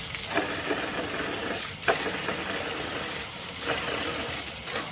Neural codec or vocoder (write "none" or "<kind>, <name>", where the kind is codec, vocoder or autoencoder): none